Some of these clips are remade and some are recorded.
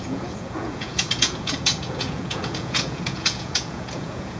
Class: remade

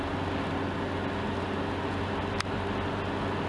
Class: recorded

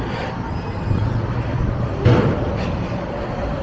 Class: recorded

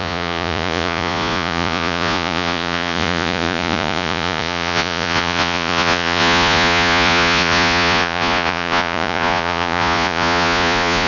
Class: remade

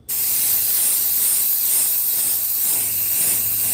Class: recorded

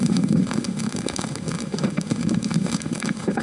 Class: remade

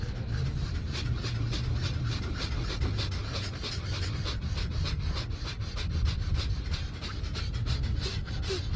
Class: recorded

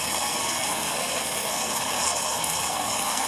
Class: remade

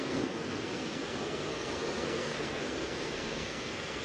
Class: remade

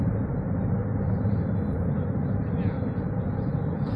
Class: recorded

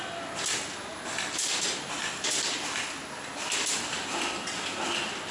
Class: recorded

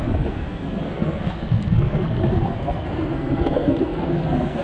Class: remade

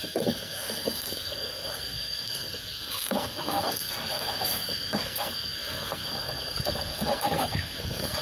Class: remade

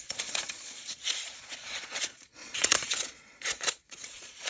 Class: remade